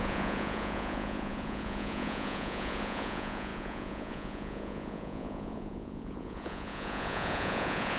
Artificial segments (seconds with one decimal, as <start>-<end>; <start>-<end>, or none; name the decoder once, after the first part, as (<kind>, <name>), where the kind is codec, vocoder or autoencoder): 0.0-8.0 (vocoder, Vocos)